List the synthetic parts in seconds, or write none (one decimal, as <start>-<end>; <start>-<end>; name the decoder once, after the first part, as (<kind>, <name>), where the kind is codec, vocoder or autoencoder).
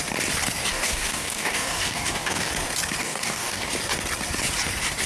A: 0.7-2.5 (codec, DAC); 3.0-3.7